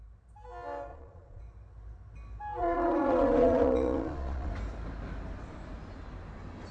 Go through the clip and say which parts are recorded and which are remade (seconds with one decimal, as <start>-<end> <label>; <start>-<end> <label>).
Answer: 0.0-0.9 recorded; 0.9-1.4 remade; 1.4-2.6 recorded; 2.6-4.5 remade; 4.5-6.7 recorded